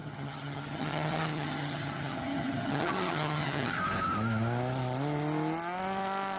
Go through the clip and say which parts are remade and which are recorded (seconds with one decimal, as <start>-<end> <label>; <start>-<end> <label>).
0.0-3.8 remade; 3.8-6.4 recorded